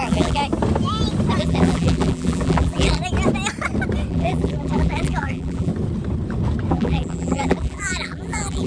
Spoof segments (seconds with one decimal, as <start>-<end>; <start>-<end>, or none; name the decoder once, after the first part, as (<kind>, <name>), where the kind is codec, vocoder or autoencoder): 0.0-0.4 (vocoder, BigVGAN v2); 1.4-3.0; 4.1-5.7; 6.7-8.7